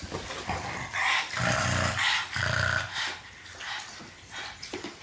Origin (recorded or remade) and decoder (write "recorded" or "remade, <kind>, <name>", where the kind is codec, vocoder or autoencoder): recorded